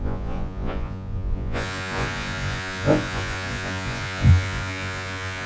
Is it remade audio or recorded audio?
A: remade